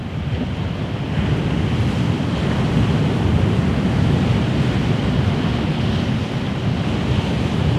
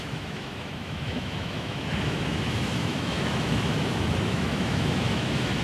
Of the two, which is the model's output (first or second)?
second